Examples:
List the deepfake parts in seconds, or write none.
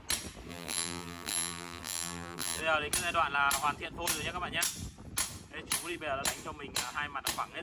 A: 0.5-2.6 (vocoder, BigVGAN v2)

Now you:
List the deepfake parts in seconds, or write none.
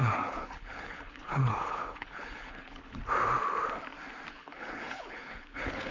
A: 0.0-3.0 (codec, HILCodec); 4.3-5.9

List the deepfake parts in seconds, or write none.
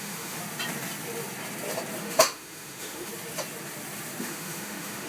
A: 0.0-0.4 (autoencoder, DAC-VAE); 2.0-3.1; 4.2-5.1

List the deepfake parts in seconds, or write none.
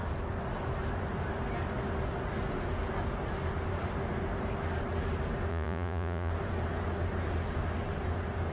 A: 5.5-6.3 (vocoder, Vocos)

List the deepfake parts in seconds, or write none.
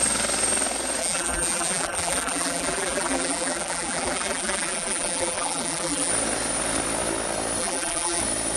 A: 1.0-6.1 (vocoder, BigVGAN v2); 7.6-8.2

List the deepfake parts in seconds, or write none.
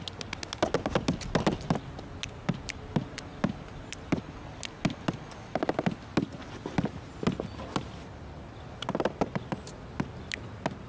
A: none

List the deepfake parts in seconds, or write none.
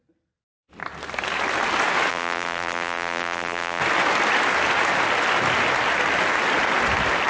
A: 2.1-3.8 (vocoder, BigVGAN v2)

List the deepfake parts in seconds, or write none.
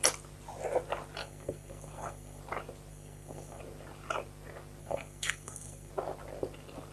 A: 1.2-2.4 (codec, SNAC); 2.9-3.6; 4.8-5.9